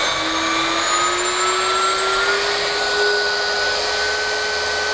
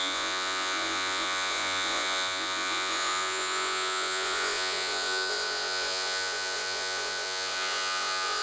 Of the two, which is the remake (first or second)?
second